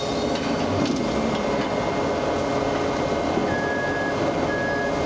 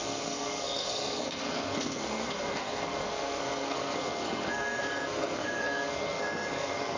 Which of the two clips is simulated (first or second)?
second